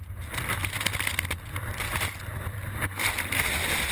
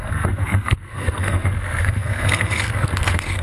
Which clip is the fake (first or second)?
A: second